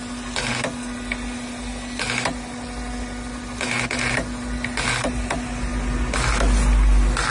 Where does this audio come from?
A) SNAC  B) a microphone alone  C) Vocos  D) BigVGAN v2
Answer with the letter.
B